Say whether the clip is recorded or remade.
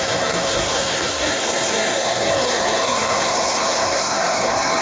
remade